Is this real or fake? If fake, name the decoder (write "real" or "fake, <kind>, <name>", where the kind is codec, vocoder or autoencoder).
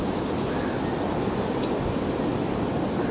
real